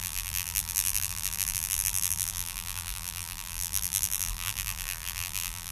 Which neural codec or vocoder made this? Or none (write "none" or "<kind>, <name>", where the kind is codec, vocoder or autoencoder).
vocoder, BigVGAN v2